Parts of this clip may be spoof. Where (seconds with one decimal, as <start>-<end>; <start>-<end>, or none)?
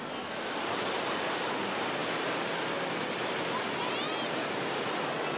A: none